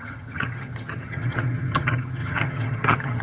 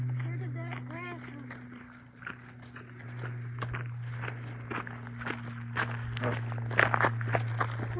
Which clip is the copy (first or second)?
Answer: first